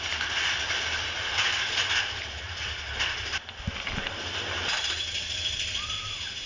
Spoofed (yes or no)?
no